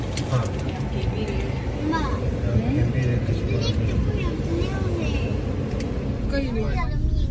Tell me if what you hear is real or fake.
real